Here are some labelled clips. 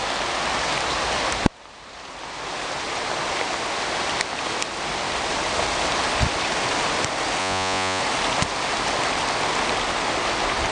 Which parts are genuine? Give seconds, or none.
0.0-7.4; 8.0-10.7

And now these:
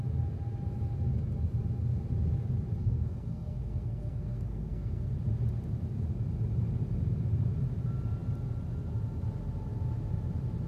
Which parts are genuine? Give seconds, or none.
0.0-2.8; 5.1-10.7

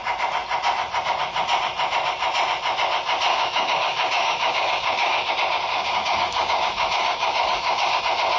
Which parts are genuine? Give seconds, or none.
0.0-3.3; 5.3-5.7; 8.0-8.4